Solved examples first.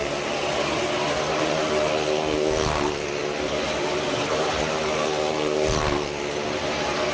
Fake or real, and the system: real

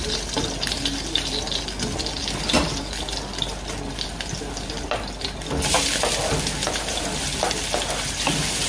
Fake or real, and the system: real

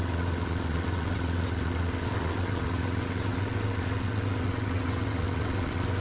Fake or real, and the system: fake, vocoder, WaveNeXt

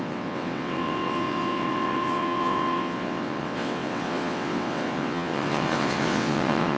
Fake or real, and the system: fake, vocoder, WaveNeXt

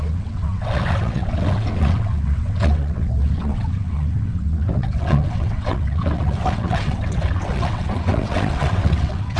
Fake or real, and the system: fake, vocoder, WaveNeXt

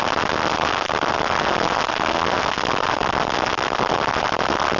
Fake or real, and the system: real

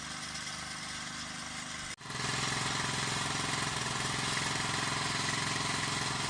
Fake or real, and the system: real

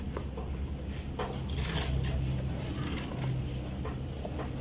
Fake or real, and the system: real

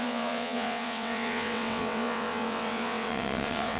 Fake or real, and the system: fake, vocoder, WaveNeXt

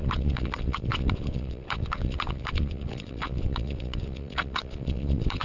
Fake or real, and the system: fake, vocoder, WaveNeXt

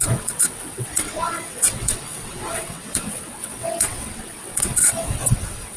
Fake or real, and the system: fake, vocoder, WaveNeXt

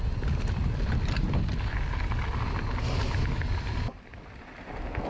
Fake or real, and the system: real